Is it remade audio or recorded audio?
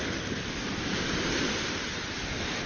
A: recorded